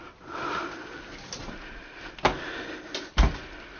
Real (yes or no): yes